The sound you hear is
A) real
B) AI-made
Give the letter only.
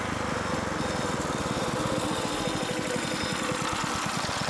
A